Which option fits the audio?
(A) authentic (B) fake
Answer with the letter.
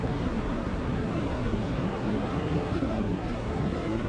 B